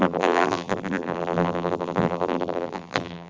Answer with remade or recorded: remade